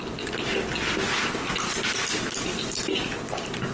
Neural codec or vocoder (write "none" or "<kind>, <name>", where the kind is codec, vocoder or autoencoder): none